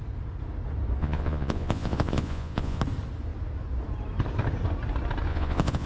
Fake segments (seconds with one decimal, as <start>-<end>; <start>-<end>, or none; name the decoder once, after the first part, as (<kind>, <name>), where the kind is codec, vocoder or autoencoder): 1.0-2.8 (vocoder, Vocos); 5.3-5.9